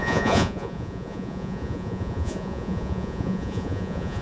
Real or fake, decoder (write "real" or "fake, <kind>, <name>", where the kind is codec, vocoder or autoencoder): fake, vocoder, Vocos